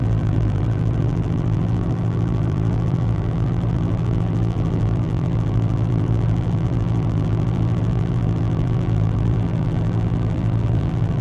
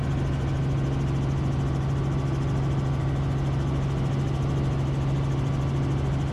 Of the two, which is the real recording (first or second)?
second